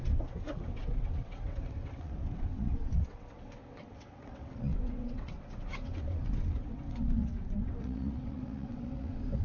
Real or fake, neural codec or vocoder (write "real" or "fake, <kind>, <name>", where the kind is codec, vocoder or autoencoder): fake, vocoder, WaveNeXt